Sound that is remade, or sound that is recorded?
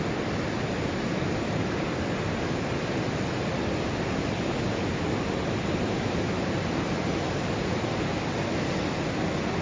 recorded